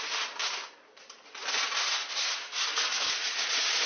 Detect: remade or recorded recorded